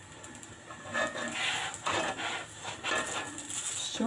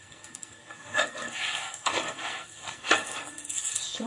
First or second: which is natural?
first